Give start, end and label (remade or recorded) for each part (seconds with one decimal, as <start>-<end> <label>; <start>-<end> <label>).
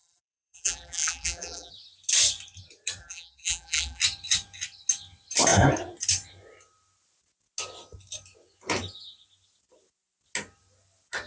0.0-1.7 remade; 1.7-3.0 recorded; 3.0-4.0 remade; 4.0-11.3 recorded